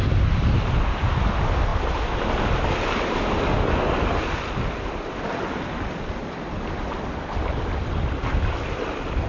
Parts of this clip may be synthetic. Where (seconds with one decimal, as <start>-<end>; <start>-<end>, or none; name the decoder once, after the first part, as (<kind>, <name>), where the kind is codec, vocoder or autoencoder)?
none